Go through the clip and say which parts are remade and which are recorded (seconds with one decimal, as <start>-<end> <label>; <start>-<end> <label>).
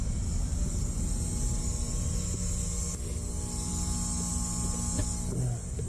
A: 0.0-5.9 recorded